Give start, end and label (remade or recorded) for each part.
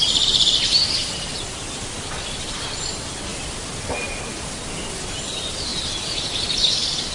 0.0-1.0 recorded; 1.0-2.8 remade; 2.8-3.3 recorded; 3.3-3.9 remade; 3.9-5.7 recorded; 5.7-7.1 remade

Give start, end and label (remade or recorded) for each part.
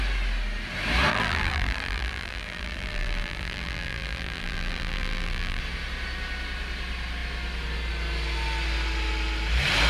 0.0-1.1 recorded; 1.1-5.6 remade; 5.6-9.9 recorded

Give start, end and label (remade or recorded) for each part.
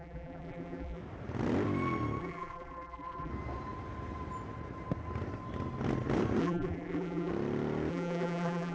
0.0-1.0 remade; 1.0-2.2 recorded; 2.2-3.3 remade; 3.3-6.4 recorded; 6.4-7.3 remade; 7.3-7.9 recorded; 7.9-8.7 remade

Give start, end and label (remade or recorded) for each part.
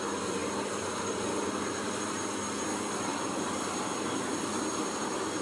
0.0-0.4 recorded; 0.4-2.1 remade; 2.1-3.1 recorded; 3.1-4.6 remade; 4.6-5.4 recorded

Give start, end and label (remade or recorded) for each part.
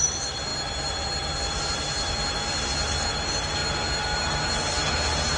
0.0-5.4 recorded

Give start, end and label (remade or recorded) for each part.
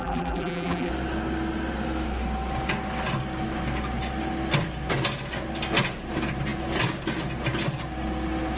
0.0-0.9 remade; 0.9-8.6 recorded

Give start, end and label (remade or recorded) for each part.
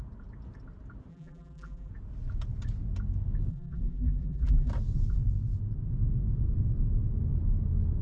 0.0-1.1 recorded; 1.1-1.9 remade; 1.9-3.5 recorded; 3.5-4.7 remade; 4.7-8.0 recorded